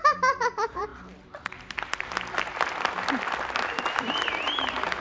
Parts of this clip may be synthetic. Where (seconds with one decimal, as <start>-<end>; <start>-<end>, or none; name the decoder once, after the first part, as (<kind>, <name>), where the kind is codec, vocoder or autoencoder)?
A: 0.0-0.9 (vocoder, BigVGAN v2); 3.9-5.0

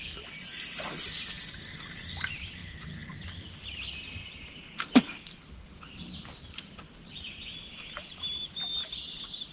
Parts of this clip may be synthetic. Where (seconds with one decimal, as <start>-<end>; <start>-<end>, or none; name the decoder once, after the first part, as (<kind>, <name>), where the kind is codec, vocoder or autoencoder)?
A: none

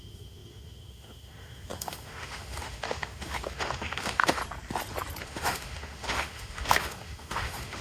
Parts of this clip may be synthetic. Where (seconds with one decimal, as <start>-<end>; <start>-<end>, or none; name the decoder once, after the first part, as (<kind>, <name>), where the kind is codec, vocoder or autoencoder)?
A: 0.0-4.4 (autoencoder, DAC-VAE); 5.2-7.8

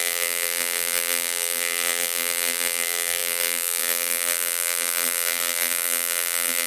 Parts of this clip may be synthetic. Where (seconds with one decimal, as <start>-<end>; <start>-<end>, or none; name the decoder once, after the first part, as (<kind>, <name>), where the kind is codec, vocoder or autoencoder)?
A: 0.0-6.7 (vocoder, BigVGAN v2)

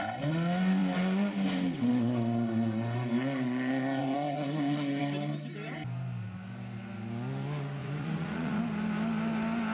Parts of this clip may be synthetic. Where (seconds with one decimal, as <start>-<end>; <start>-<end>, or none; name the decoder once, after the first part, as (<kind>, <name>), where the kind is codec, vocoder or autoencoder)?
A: 4.0-5.0 (vocoder, Vocos); 7.8-8.6

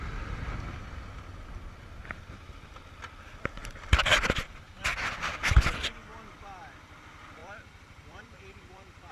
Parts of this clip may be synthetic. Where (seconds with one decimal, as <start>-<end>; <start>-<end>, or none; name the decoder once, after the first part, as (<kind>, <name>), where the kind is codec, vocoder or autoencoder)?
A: 3.6-5.1 (vocoder, BigVGAN v2); 7.4-9.1

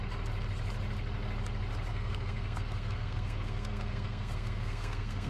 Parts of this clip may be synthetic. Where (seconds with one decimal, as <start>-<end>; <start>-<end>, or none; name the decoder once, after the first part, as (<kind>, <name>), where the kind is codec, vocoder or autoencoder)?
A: 1.9-5.3 (codec, SNAC)

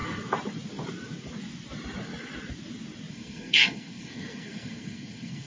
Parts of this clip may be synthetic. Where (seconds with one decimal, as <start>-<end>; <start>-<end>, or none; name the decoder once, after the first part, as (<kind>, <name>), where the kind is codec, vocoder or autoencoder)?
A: 3.1-5.5 (codec, SNAC)